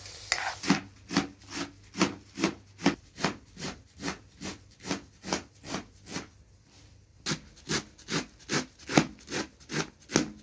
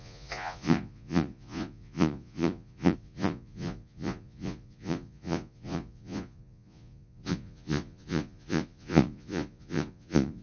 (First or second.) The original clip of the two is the first